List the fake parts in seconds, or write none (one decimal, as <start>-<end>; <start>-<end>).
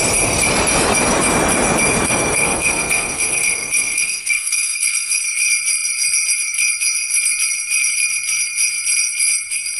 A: 2.0-5.2